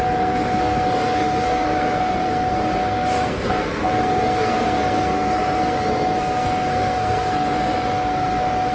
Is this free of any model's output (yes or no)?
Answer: no